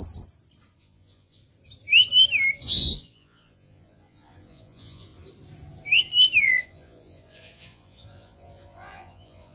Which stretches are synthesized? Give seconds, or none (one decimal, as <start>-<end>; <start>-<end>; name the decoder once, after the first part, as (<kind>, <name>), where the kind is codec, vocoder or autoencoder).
0.8-1.4 (vocoder, Vocos); 2.6-5.1; 6.4-9.5